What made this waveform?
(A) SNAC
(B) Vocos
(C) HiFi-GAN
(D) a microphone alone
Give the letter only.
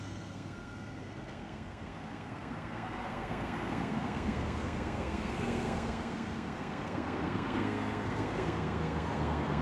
A